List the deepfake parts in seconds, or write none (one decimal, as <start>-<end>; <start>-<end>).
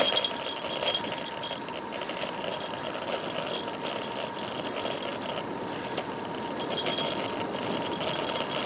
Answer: none